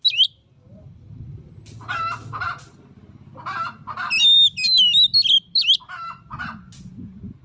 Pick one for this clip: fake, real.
real